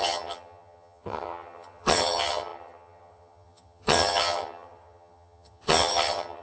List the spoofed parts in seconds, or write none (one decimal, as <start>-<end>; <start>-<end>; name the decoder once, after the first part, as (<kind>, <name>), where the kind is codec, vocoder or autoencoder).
0.0-6.4 (vocoder, HiFi-GAN)